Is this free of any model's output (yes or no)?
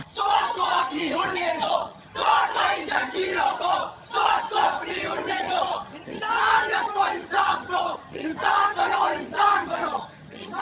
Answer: no